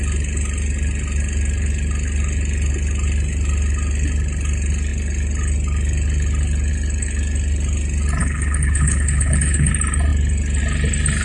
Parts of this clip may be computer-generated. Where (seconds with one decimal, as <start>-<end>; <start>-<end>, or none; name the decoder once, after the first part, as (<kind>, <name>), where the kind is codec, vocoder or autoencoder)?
8.2-9.7 (codec, HILCodec)